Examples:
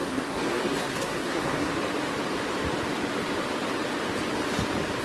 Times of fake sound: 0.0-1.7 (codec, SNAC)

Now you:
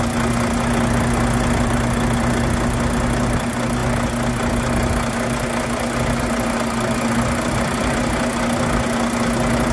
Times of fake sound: none

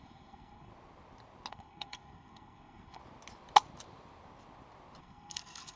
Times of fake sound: 0.0-0.7 (codec, SNAC); 1.5-3.0; 5.0-5.8

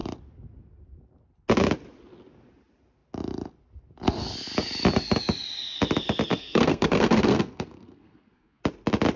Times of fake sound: 6.3-8.6 (codec, SNAC)